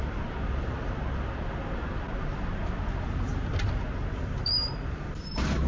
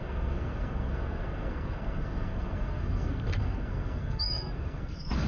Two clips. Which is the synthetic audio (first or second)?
second